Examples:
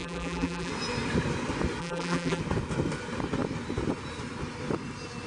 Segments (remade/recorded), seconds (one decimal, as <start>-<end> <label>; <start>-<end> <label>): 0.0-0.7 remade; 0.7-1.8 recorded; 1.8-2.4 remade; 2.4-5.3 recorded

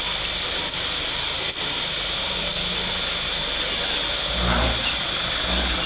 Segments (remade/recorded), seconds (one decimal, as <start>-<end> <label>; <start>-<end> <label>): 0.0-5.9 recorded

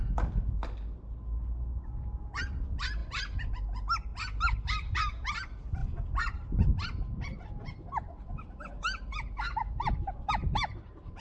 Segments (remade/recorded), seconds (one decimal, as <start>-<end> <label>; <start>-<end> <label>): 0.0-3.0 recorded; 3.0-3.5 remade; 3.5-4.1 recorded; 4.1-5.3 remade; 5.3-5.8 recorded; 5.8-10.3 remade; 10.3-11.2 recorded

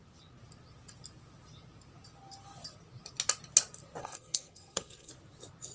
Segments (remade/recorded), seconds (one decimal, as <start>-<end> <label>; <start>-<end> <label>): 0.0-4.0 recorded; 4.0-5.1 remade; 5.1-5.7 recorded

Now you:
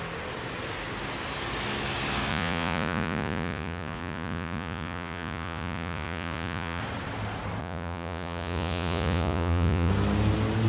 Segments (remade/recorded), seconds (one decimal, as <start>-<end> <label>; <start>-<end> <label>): 0.0-2.3 recorded; 2.3-6.8 remade; 6.8-7.6 recorded; 7.6-9.9 remade; 9.9-10.7 recorded

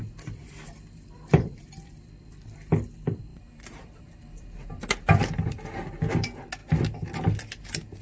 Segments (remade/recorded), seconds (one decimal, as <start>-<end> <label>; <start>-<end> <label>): 0.0-0.4 recorded; 0.4-5.2 remade; 5.2-8.0 recorded

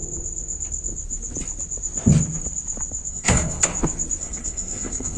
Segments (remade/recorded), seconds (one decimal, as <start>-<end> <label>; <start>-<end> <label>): 0.0-3.1 recorded; 3.1-3.7 remade; 3.7-4.2 recorded; 4.2-5.2 remade

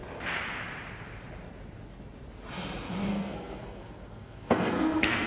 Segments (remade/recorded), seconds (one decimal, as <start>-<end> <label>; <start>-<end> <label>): 0.0-3.1 recorded; 3.1-5.3 remade